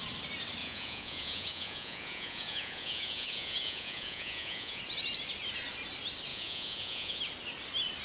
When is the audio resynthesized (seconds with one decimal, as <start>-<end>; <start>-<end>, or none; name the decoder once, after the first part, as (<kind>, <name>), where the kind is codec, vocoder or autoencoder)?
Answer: 0.6-4.8 (vocoder, Vocos); 6.3-7.2